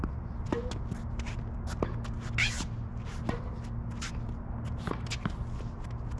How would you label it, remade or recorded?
recorded